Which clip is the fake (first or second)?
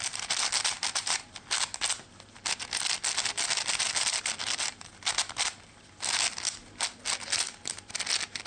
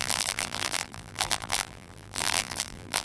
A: second